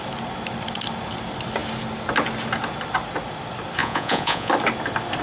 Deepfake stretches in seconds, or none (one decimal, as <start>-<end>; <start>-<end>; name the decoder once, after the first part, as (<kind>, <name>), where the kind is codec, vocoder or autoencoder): 3.8-4.5 (vocoder, Vocos)